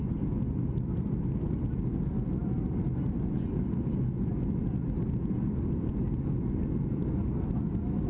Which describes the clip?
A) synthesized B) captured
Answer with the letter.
B